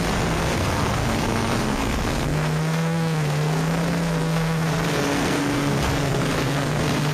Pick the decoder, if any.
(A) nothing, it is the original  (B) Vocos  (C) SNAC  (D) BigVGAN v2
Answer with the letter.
C